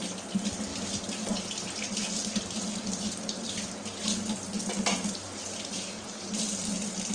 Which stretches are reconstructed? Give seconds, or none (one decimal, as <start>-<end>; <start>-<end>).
none